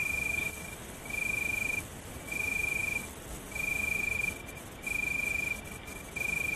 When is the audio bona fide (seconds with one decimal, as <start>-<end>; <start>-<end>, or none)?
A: 0.0-6.6